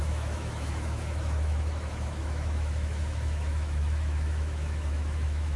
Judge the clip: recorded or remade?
remade